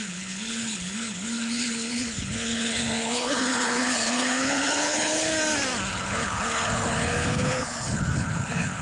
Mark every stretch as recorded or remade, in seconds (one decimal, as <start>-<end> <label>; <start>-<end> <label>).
0.0-5.3 remade; 5.3-5.9 recorded; 5.9-8.8 remade